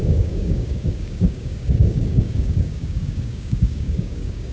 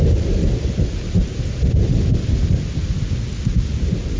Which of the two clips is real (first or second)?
second